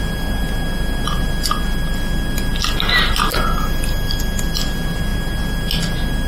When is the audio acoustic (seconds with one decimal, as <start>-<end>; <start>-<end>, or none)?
0.0-6.3